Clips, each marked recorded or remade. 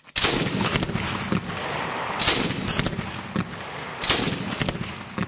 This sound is recorded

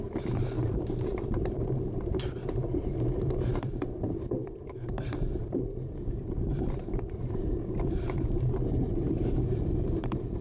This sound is remade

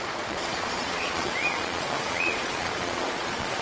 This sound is remade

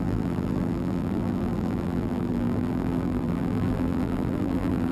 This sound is remade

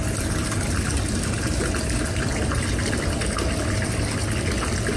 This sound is recorded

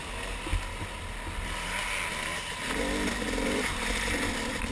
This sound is recorded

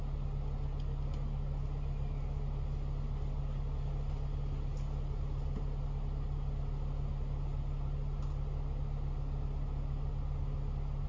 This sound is recorded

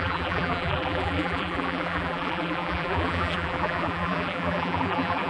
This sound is remade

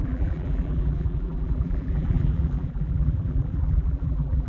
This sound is remade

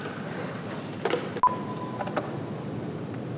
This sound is recorded